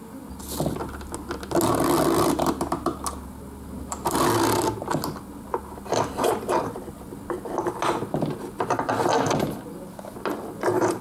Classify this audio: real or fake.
real